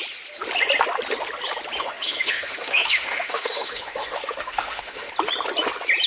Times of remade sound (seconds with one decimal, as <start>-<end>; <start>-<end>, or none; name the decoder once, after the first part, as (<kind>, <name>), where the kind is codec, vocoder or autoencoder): 1.8-5.1 (autoencoder, DAC-VAE)